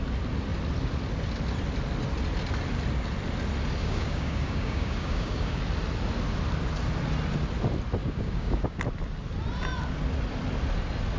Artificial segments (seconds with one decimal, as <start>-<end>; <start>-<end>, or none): 3.8-5.6; 8.0-8.8